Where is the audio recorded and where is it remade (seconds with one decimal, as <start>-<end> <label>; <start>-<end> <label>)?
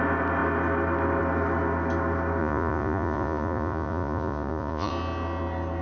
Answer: 0.0-2.4 recorded; 2.4-4.9 remade; 4.9-5.8 recorded